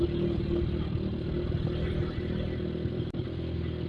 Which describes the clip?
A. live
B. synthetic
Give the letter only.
A